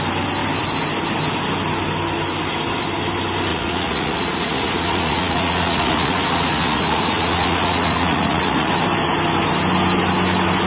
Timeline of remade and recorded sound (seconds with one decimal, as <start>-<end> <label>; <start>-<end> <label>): 0.0-3.5 recorded; 3.5-8.7 remade; 8.7-10.7 recorded